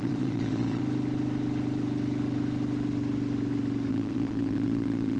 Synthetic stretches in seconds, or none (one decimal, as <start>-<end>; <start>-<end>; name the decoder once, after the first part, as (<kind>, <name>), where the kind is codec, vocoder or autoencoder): 0.0-0.8 (vocoder, Vocos); 3.9-5.2